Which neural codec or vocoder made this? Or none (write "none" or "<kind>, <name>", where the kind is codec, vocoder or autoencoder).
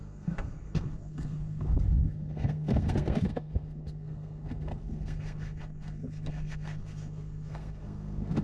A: codec, SNAC